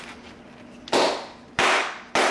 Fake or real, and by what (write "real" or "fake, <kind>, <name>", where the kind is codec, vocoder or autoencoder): real